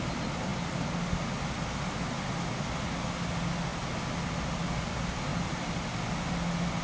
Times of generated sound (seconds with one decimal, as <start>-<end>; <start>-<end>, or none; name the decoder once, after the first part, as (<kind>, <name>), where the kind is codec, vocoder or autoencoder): none